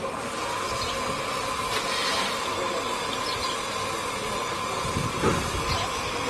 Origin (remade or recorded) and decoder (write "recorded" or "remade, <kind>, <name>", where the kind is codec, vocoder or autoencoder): recorded